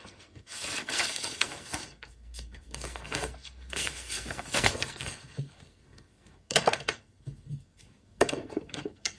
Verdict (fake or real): fake